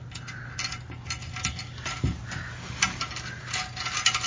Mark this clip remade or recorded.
recorded